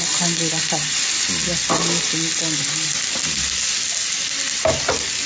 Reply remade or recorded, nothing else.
recorded